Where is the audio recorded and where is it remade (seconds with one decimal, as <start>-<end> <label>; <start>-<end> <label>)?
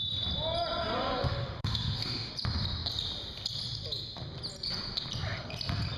0.0-1.2 recorded; 1.2-2.3 remade; 2.3-6.0 recorded